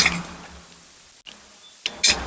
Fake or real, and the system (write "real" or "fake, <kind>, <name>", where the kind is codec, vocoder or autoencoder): real